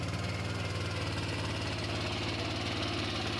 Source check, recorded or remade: recorded